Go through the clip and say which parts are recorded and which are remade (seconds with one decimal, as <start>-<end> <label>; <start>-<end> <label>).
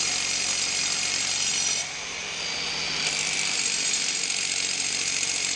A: 0.0-5.6 recorded